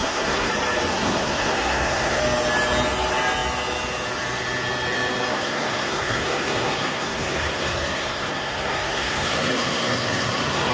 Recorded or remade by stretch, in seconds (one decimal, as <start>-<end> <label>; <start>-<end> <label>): 0.0-0.5 remade; 0.5-0.9 recorded; 0.9-2.2 remade; 2.2-5.3 recorded; 5.3-10.7 remade